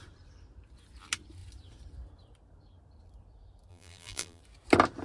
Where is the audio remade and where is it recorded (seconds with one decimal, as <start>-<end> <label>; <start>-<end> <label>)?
0.0-3.7 recorded; 3.7-4.4 remade; 4.4-5.0 recorded